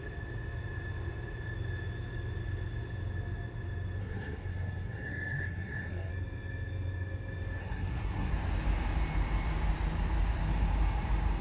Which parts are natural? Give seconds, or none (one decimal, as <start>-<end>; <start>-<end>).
0.0-4.0; 6.1-7.6; 8.3-11.4